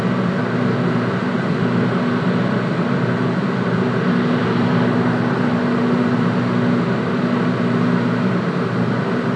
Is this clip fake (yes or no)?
yes